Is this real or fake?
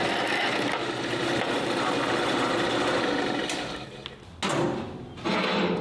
real